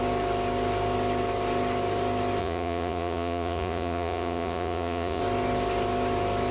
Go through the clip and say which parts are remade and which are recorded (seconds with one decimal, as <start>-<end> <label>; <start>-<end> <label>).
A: 0.0-2.4 recorded; 2.4-5.2 remade; 5.2-6.5 recorded